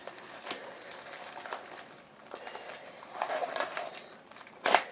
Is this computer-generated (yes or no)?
yes